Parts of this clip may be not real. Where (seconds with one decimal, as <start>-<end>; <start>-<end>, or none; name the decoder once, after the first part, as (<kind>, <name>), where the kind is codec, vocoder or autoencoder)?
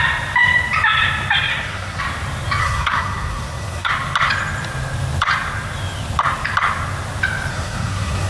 1.5-2.0 (codec, SNAC); 2.6-3.9; 7.5-8.3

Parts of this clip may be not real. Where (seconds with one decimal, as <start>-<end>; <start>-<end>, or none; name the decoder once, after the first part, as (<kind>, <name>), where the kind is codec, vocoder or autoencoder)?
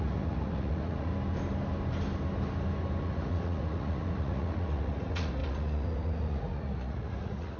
0.0-1.1 (vocoder, Vocos); 3.0-7.6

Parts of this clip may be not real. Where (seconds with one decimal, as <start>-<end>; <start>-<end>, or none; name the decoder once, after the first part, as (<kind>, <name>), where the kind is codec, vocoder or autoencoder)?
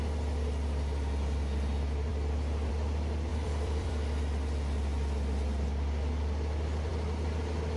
3.3-3.9 (vocoder, BigVGAN v2)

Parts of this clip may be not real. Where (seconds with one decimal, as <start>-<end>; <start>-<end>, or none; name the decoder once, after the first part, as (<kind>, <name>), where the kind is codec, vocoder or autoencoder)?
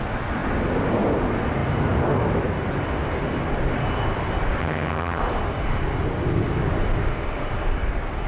4.6-5.2 (vocoder, HiFi-GAN)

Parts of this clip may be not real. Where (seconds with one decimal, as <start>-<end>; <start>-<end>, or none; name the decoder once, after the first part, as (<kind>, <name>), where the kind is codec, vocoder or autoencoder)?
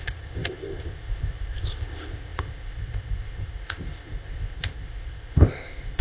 0.0-6.0 (codec, ZipCodec)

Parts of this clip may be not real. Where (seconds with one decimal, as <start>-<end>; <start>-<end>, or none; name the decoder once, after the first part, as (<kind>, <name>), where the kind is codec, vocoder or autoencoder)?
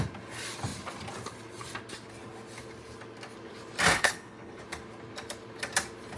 3.9-4.6 (codec, HILCodec)